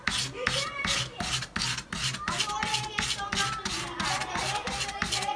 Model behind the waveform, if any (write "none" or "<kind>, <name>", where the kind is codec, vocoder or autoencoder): none